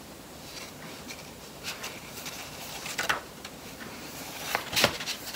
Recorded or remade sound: remade